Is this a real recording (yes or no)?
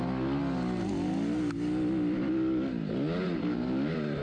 yes